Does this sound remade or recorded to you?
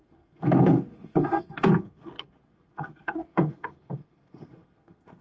remade